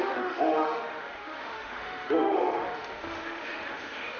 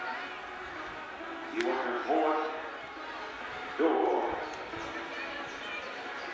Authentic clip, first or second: second